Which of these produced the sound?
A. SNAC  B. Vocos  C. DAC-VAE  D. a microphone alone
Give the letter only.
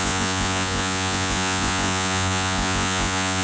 B